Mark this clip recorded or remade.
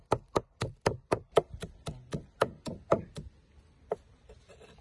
recorded